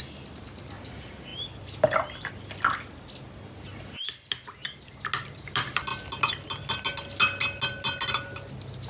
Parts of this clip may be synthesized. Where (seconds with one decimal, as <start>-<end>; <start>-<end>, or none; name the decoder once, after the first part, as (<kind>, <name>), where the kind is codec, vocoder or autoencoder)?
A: none